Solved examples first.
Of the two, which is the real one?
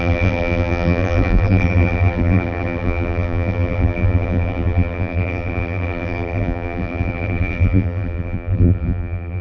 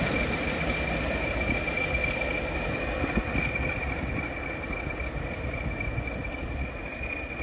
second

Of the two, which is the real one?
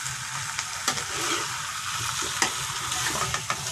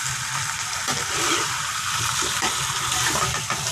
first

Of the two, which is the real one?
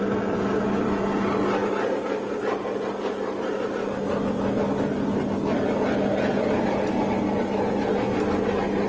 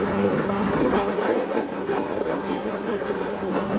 first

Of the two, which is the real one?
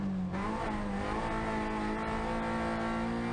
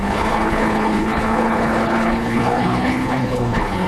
first